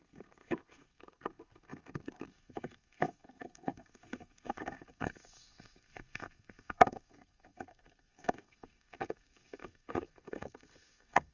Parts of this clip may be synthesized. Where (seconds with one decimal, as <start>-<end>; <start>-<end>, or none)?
0.0-11.3